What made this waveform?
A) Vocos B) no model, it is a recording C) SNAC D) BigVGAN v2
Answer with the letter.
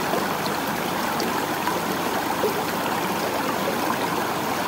B